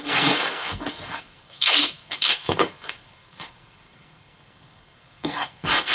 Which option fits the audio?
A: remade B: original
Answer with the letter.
A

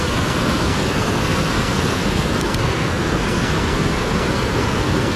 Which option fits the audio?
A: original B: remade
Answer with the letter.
B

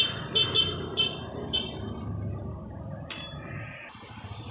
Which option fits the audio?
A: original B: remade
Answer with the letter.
A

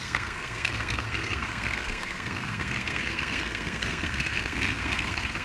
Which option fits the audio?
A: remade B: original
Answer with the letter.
A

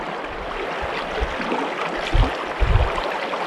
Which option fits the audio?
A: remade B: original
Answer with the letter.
B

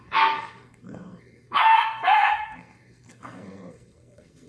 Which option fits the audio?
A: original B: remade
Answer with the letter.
B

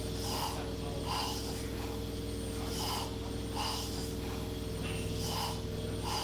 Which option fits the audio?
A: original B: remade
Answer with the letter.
A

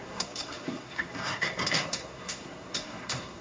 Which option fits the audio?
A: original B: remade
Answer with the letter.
B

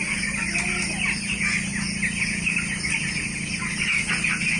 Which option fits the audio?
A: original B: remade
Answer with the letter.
A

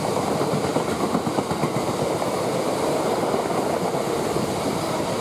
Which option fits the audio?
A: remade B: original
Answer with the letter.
B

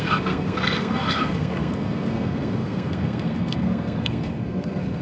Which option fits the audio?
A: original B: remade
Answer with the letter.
B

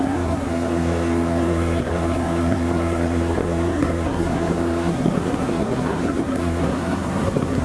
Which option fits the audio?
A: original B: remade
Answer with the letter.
B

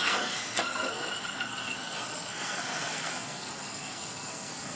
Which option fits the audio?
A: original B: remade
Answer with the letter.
B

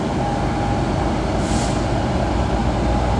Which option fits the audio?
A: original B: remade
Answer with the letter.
A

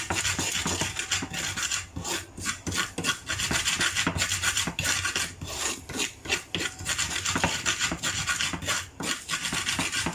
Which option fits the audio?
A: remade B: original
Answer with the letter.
B